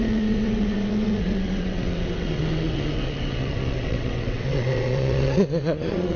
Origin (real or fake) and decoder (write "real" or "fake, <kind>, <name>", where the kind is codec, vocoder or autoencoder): fake, vocoder, WaveNeXt